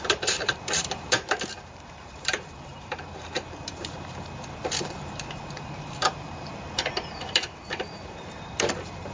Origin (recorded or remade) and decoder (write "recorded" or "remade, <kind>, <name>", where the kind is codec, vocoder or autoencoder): remade, vocoder, BigVGAN v2